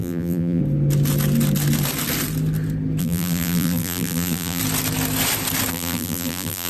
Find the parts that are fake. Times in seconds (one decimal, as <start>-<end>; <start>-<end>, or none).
0.0-0.6; 3.0-4.6; 5.7-6.7